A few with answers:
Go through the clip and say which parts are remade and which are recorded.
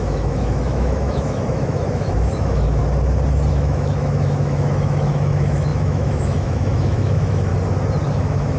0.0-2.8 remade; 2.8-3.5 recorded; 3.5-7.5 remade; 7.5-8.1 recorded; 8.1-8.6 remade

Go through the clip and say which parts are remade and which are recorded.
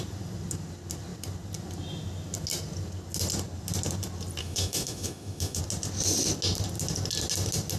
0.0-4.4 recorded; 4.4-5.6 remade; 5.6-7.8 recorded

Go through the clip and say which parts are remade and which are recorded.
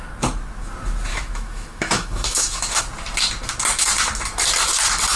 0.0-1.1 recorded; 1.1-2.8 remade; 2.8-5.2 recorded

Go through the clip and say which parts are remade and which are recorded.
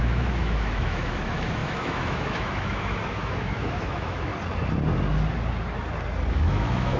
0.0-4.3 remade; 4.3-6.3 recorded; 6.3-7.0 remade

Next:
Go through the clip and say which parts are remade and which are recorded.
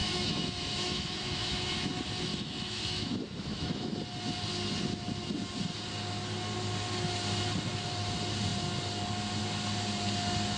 0.0-1.9 remade; 1.9-2.3 recorded; 2.3-4.0 remade; 4.0-10.6 recorded